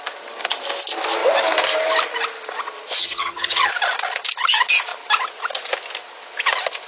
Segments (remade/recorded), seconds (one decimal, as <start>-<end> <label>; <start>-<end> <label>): 0.0-3.0 recorded; 3.0-3.7 remade; 3.7-6.9 recorded